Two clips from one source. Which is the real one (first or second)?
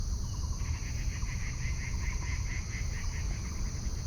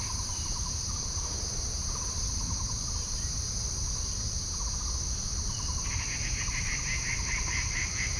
first